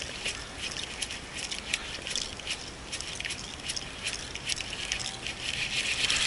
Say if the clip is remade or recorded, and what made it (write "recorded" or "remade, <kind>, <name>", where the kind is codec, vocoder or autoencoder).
recorded